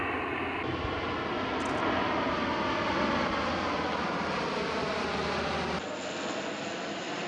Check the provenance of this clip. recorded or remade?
recorded